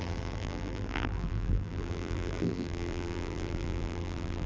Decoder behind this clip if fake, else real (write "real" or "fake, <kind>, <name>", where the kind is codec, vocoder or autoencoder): fake, vocoder, BigVGAN v2